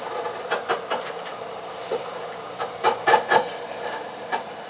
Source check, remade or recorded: remade